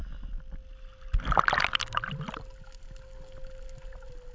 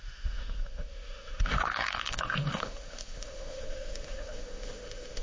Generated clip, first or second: second